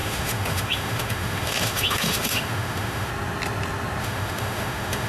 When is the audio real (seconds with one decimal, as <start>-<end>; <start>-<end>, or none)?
3.1-4.0